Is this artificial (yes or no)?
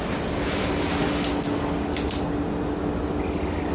no